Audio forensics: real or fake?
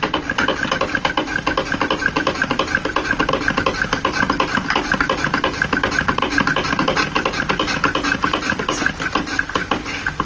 real